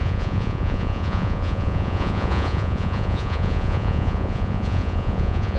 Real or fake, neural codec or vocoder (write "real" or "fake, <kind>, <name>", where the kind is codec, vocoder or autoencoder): fake, vocoder, Vocos